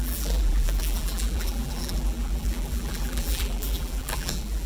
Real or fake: fake